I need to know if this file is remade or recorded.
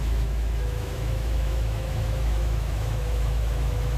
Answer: remade